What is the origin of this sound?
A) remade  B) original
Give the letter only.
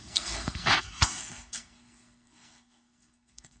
A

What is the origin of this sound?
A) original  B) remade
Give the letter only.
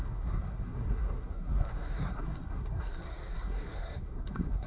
B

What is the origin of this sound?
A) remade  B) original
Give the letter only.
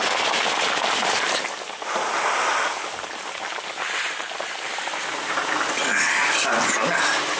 B